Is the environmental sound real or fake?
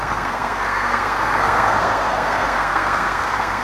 fake